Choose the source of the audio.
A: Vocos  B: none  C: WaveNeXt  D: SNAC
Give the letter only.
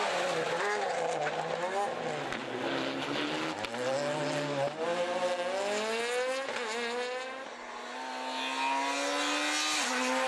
B